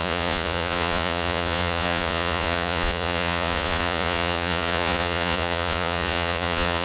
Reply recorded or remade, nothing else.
remade